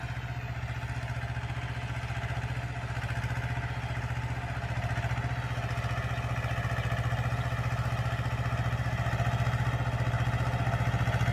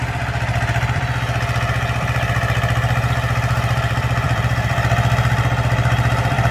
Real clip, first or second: first